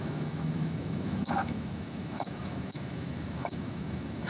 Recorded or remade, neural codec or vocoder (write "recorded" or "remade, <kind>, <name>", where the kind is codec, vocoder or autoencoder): remade, autoencoder, DAC-VAE